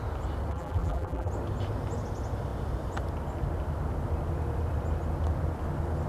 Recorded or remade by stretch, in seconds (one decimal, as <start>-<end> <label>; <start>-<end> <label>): 0.0-0.5 recorded; 0.5-1.3 remade; 1.3-6.1 recorded